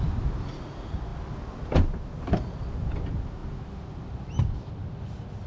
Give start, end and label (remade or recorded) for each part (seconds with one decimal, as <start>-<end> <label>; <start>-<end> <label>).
0.0-5.5 recorded